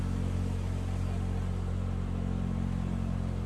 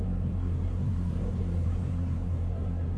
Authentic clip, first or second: first